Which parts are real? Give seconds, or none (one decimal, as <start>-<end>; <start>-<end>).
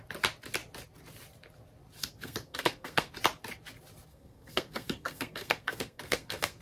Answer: 0.0-2.0; 3.1-4.1